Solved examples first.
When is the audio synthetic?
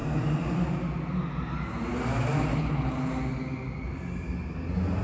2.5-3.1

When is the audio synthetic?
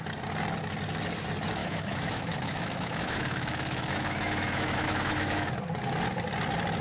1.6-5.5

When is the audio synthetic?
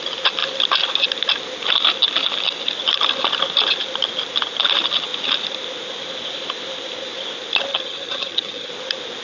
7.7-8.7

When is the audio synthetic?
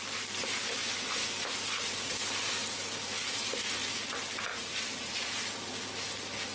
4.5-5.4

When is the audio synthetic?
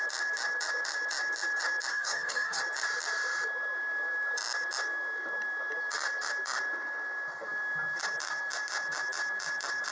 1.9-2.6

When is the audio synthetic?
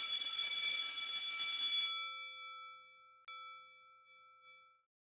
0.0-0.8